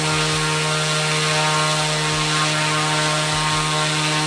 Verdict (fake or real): real